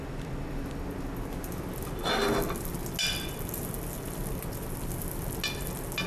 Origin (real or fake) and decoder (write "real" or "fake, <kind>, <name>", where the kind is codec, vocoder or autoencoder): real